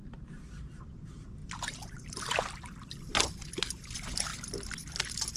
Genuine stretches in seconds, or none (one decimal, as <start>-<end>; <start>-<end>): 0.7-1.4; 2.4-5.4